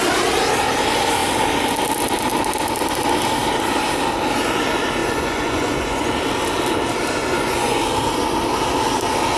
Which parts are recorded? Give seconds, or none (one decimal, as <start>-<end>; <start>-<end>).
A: 0.0-5.0; 6.1-7.2; 7.8-9.4